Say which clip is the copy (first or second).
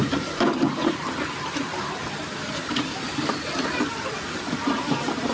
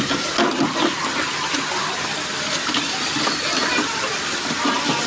first